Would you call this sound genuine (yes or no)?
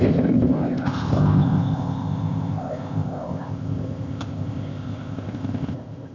no